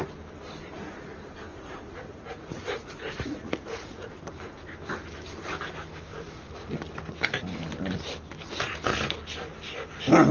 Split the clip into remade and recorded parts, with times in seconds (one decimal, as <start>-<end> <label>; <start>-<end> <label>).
0.0-1.5 recorded; 1.5-4.1 remade; 4.1-6.1 recorded; 6.1-6.7 remade; 6.7-10.3 recorded